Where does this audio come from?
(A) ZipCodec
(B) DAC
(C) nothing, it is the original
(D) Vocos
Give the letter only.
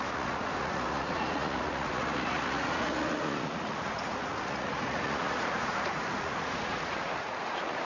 D